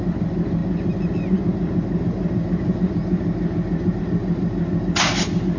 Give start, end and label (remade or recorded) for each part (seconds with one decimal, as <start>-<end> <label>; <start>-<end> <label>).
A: 0.0-5.6 recorded